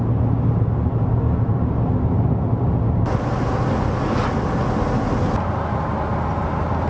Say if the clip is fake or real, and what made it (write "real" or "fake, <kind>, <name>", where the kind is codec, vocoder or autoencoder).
real